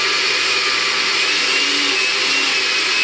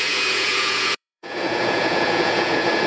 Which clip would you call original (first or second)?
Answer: first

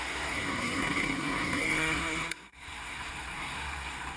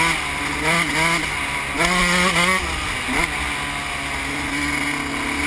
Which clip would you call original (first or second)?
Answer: second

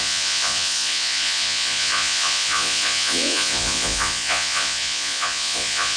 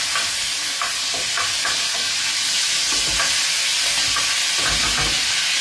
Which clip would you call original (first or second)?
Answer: second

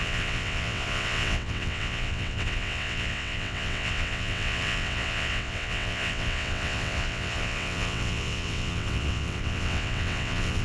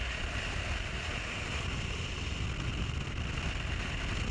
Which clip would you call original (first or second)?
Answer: second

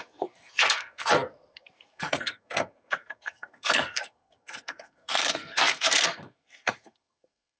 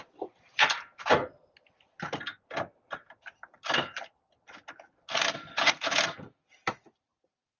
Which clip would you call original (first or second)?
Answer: second